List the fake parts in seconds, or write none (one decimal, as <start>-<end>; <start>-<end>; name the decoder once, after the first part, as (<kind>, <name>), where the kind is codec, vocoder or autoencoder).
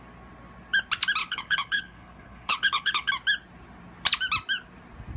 1.2-3.1 (codec, HILCodec)